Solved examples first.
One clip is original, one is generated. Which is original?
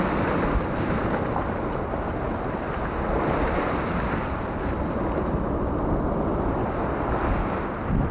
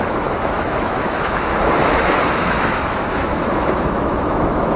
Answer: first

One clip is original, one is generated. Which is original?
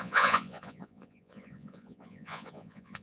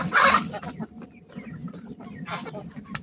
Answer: second